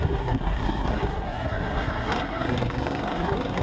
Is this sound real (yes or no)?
no